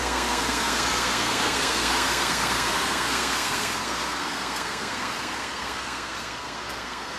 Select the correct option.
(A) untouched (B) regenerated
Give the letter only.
B